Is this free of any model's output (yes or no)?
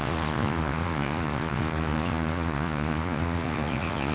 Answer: no